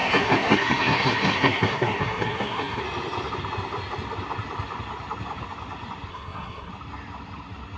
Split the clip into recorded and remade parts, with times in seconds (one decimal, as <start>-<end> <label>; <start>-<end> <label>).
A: 0.0-2.8 remade; 2.8-6.1 recorded; 6.1-6.7 remade; 6.7-7.8 recorded